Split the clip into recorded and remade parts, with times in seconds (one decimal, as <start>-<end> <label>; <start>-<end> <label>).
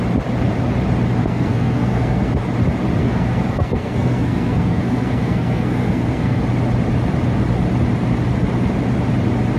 0.0-1.2 recorded; 1.2-2.3 remade; 2.3-3.0 recorded; 3.0-6.4 remade; 6.4-9.6 recorded